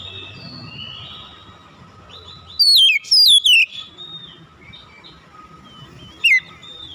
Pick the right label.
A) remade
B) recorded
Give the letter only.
B